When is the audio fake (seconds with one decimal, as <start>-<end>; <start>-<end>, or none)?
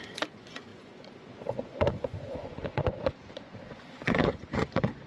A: 0.0-5.1